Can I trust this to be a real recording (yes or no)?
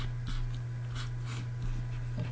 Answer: yes